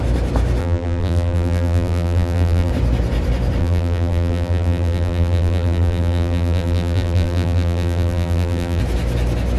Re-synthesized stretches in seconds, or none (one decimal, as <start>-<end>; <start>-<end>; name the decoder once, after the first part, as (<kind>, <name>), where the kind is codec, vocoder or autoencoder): 0.6-2.7 (vocoder, BigVGAN v2); 3.6-8.8